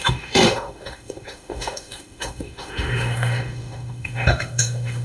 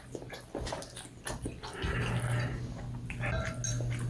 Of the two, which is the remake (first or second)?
first